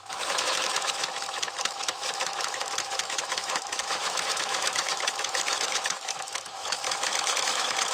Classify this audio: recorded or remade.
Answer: remade